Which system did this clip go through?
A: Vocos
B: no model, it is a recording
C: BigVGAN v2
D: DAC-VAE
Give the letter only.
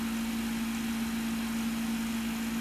B